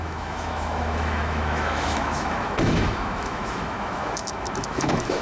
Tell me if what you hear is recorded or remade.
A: remade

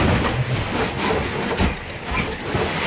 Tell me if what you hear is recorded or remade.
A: recorded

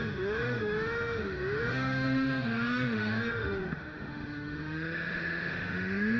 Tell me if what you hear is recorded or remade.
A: remade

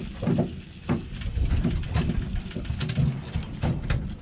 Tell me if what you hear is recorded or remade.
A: recorded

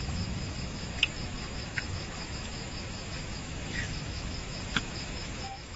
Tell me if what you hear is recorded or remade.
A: remade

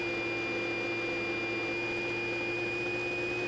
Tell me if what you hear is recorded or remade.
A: recorded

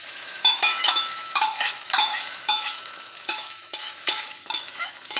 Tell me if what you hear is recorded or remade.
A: remade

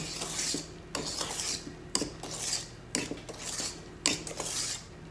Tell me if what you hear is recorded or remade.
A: recorded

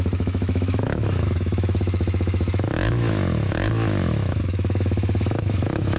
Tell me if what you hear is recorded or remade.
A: remade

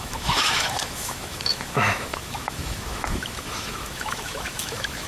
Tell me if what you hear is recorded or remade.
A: remade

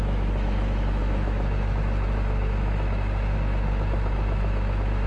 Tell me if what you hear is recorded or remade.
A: remade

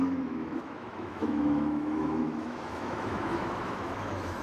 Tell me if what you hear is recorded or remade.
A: remade